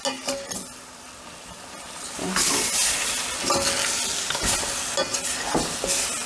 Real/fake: real